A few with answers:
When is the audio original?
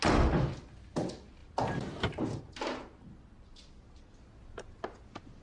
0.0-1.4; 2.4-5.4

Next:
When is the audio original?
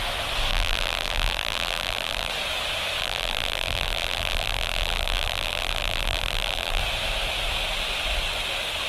0.0-0.5; 2.3-3.0; 6.8-8.9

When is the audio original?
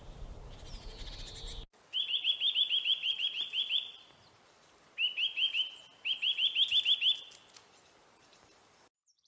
0.0-3.0; 4.1-9.3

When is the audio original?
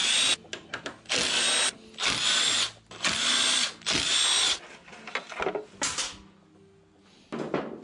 0.0-7.8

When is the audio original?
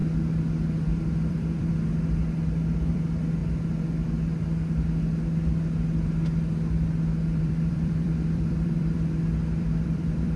0.0-0.8; 1.7-2.9; 3.4-7.4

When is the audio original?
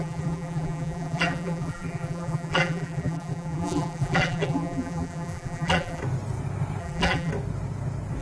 6.0-6.8; 7.3-8.2